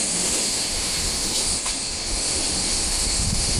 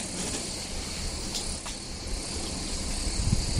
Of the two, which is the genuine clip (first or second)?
second